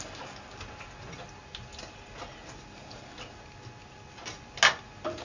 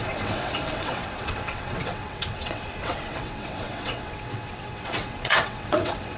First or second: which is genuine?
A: first